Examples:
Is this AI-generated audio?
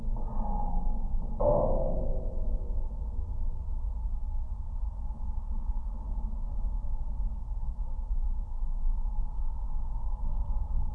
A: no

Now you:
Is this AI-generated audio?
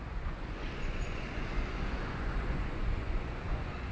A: yes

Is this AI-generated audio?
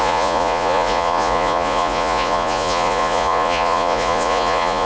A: yes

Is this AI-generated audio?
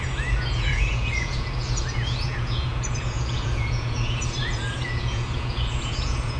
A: yes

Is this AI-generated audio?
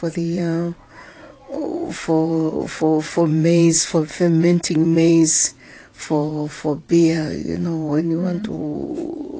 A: yes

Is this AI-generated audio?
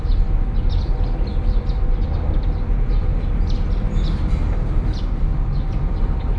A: no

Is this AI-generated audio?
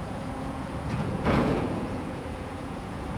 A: yes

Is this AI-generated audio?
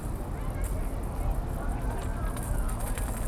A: no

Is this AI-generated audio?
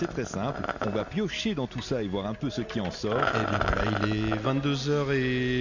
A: no